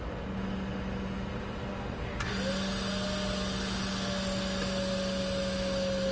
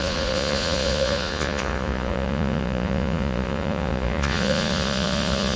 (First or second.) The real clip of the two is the first